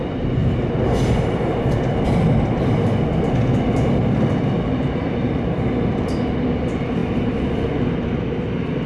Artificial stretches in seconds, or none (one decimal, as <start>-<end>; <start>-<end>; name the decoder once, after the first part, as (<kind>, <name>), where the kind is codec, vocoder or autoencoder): none